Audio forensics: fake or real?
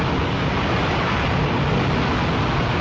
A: real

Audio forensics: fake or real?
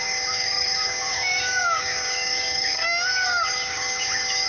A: fake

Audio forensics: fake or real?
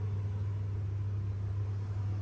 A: real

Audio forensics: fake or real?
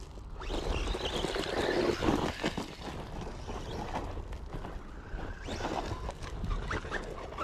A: real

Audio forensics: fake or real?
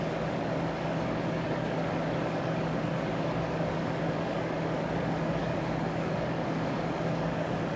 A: fake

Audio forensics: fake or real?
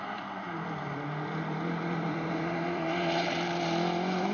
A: fake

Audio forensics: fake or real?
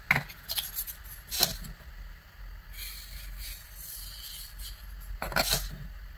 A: real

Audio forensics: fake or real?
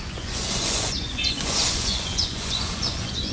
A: fake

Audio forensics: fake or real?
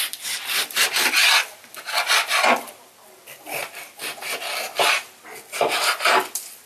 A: real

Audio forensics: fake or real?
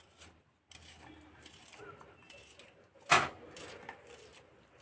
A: real